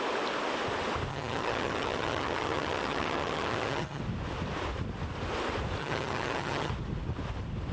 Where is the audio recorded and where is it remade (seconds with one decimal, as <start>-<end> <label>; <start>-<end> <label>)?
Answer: 0.0-1.1 recorded; 1.1-4.0 remade; 4.0-5.8 recorded; 5.8-6.7 remade; 6.7-7.7 recorded